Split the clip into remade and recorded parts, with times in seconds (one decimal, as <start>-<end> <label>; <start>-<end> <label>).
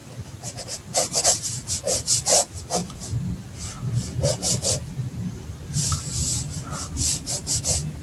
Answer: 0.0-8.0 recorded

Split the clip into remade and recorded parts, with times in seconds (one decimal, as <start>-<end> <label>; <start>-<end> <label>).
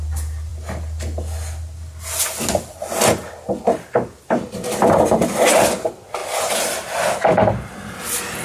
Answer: 0.0-8.4 recorded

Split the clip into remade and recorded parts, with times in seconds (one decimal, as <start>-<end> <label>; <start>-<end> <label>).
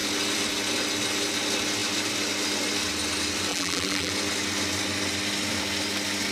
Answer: 0.0-3.5 recorded; 3.5-4.1 remade; 4.1-6.3 recorded